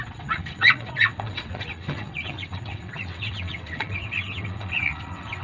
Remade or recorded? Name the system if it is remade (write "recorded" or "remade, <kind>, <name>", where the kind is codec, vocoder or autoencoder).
remade, vocoder, WaveNeXt